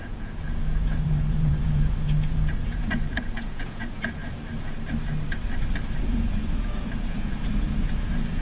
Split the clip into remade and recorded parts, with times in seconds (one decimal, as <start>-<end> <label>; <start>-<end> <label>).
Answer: 0.0-4.2 remade; 4.2-6.0 recorded; 6.0-8.4 remade